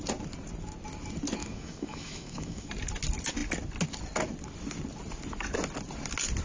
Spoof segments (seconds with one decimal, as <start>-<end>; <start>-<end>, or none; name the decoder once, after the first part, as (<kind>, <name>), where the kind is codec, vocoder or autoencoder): 1.4-2.7 (autoencoder, DAC-VAE)